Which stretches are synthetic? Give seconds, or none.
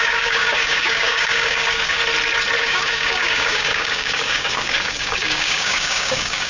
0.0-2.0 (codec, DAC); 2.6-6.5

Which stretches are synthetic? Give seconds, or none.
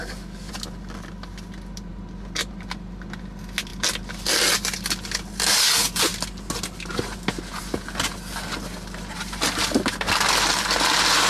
0.0-0.5 (codec, DAC)